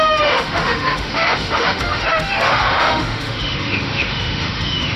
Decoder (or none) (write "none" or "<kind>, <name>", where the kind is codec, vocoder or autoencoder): autoencoder, DAC-VAE